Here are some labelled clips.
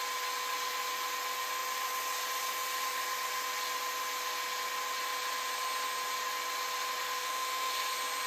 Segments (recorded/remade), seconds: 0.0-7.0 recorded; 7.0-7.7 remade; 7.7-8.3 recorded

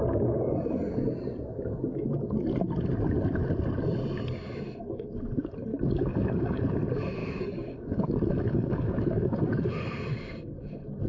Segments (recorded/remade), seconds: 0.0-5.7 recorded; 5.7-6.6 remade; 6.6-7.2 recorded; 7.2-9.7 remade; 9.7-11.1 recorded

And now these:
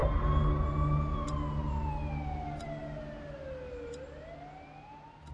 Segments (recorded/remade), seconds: 0.0-5.3 recorded

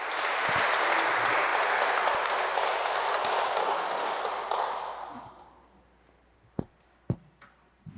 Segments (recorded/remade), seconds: 0.0-3.6 recorded; 3.6-4.2 remade; 4.2-8.0 recorded